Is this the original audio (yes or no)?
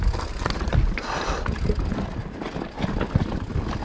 yes